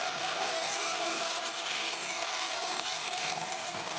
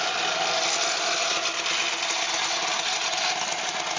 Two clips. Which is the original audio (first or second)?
second